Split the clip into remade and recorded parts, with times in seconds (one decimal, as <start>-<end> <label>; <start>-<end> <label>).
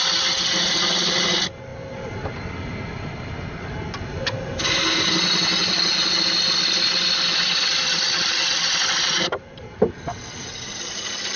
0.0-11.4 recorded